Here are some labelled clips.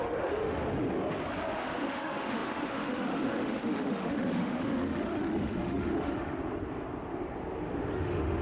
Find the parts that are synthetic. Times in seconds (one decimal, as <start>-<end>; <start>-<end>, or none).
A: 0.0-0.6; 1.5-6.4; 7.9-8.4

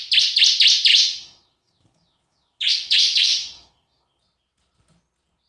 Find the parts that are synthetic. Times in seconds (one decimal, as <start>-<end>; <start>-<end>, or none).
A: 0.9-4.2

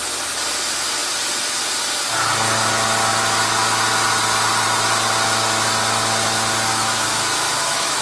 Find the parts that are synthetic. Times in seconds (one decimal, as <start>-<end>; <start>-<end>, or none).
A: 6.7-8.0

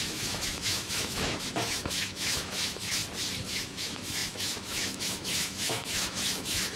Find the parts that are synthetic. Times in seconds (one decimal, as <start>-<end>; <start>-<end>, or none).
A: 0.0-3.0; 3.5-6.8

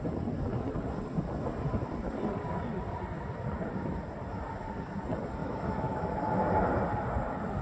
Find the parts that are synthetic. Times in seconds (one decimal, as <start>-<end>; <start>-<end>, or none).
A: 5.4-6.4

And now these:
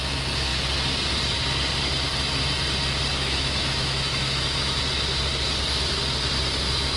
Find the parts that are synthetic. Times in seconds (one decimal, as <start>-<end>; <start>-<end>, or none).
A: 3.1-4.8

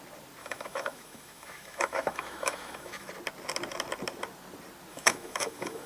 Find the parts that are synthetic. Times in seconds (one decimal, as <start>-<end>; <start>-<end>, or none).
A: 0.4-3.1; 4.9-5.9